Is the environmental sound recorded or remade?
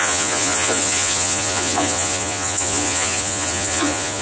remade